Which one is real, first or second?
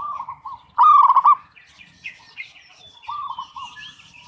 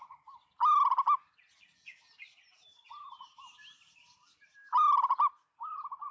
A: second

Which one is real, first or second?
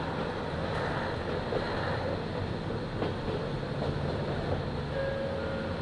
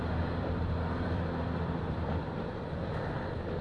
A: first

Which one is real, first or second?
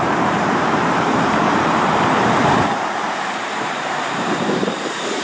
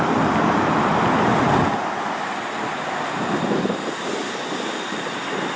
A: second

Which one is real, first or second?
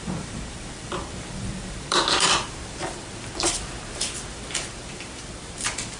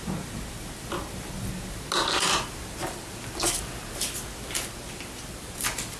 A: second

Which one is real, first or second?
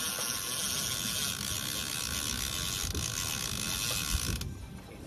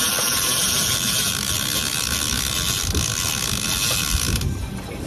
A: first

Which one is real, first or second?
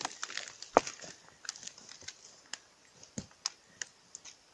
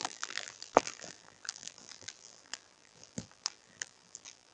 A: first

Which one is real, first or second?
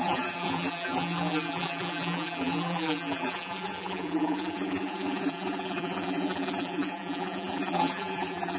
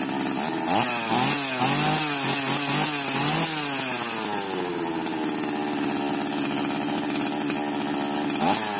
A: second